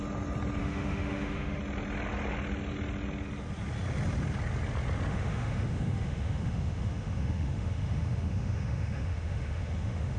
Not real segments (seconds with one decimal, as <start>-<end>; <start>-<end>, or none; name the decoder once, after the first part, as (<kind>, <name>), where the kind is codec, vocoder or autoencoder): 0.6-1.6 (autoencoder, DAC-VAE); 5.1-10.2